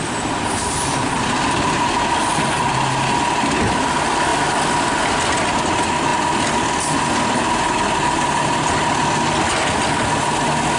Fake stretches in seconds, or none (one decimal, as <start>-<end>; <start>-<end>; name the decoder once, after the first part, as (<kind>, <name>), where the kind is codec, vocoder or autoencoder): none